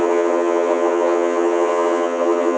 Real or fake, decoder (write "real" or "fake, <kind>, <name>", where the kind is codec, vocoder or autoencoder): fake, vocoder, HiFi-GAN